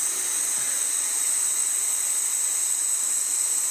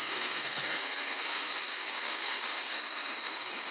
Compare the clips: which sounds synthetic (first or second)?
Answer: second